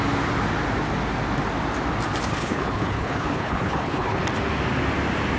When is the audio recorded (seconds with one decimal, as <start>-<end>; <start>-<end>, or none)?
0.0-2.3; 4.2-5.4